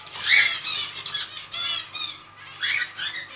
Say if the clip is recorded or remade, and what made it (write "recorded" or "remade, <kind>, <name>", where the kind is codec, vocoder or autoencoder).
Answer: recorded